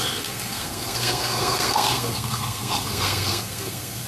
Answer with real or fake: fake